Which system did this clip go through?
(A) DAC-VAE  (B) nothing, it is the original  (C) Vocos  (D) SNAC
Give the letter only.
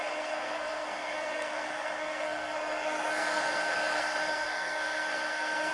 D